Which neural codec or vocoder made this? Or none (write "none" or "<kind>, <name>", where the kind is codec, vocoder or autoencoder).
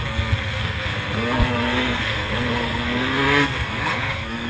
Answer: codec, SNAC